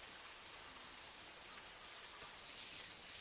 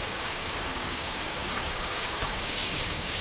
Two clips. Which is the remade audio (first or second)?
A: second